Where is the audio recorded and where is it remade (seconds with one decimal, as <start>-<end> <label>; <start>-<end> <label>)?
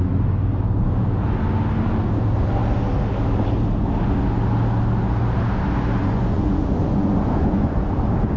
0.0-6.0 recorded; 6.0-7.8 remade; 7.8-8.4 recorded